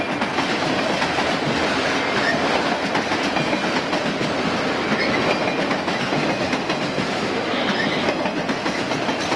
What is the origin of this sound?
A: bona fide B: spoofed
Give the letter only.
A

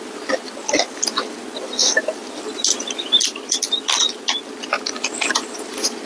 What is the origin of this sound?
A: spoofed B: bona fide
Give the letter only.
B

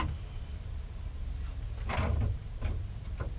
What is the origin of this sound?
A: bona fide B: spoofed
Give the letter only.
A